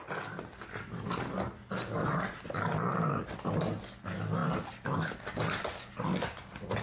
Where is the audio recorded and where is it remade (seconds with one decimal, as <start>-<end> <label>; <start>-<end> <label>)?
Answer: 0.0-6.8 recorded